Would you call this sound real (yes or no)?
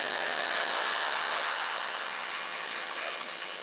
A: no